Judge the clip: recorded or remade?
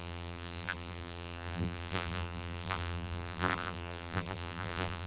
remade